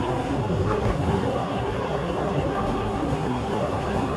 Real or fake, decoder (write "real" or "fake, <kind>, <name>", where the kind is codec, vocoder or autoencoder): fake, codec, SNAC